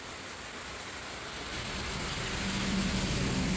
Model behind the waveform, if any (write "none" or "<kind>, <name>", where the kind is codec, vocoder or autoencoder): none